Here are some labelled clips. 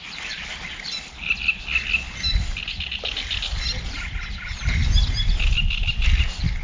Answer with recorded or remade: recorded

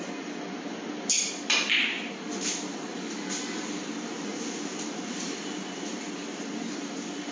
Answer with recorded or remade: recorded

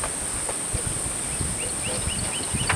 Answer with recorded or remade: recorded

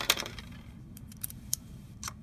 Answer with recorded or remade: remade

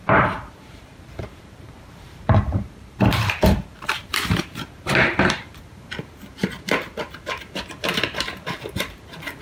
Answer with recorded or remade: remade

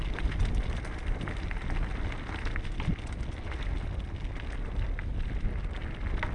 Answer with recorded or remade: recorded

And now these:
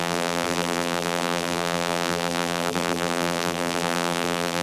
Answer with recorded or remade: remade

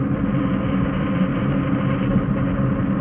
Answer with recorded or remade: recorded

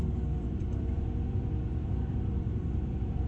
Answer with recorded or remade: remade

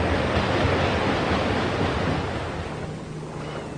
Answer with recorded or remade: recorded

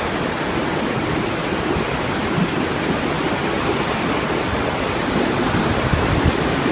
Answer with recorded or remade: recorded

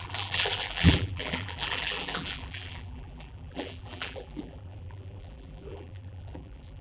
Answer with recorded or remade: remade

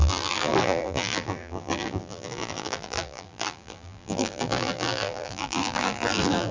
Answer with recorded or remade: remade